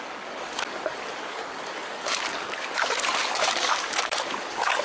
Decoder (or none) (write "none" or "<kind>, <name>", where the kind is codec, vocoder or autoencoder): codec, DAC